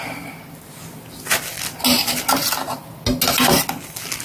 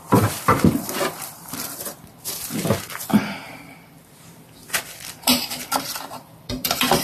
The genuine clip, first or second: first